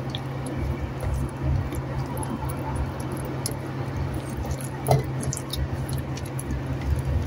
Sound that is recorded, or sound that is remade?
recorded